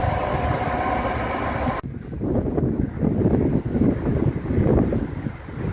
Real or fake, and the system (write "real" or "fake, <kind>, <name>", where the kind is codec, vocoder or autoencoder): real